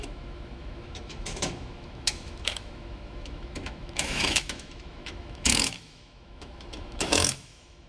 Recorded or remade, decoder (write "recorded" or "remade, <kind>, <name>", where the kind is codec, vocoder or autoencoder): remade, autoencoder, DAC-VAE